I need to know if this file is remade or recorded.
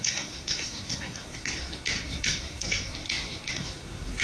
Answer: remade